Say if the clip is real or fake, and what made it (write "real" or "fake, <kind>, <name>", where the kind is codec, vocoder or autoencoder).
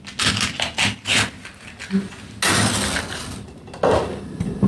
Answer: real